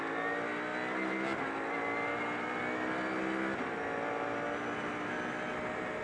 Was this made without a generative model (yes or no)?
yes